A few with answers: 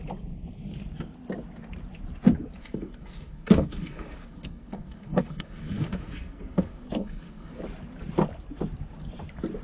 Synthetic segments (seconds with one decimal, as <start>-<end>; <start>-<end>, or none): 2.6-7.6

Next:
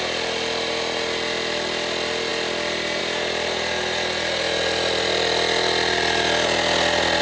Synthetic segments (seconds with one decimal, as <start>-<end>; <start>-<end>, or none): none

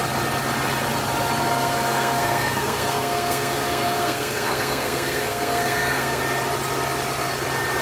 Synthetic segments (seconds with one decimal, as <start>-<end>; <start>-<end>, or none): 1.5-6.2